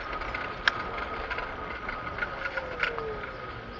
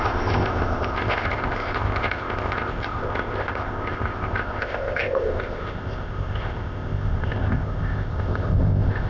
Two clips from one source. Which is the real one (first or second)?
first